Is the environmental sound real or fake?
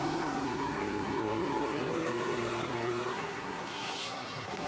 fake